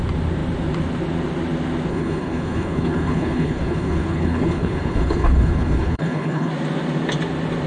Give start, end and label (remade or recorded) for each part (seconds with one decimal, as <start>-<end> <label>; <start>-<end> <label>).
0.0-1.9 recorded; 1.9-6.5 remade; 6.5-7.7 recorded